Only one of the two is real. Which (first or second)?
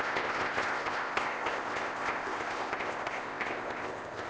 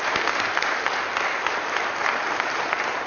second